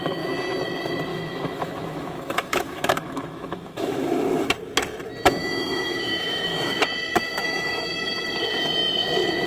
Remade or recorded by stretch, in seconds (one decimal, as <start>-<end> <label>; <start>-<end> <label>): 0.0-1.1 recorded; 1.1-4.5 remade; 4.5-5.4 recorded; 5.4-6.7 remade; 6.7-7.4 recorded; 7.4-7.9 remade; 7.9-9.5 recorded